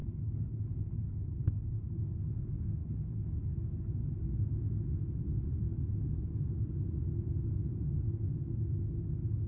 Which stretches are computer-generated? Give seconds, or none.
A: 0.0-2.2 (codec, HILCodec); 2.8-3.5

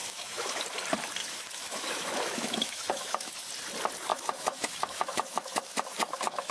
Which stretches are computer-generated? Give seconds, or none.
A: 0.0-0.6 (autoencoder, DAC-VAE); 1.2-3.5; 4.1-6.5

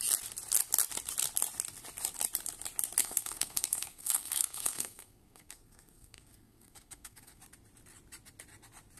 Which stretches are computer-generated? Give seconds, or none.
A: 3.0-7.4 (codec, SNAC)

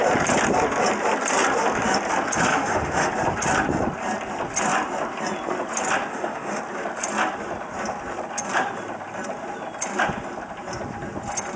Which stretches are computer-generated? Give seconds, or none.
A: 2.5-3.1 (autoencoder, DAC-VAE); 6.1-6.6